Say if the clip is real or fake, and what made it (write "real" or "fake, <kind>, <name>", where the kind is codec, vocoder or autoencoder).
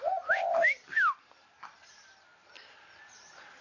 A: real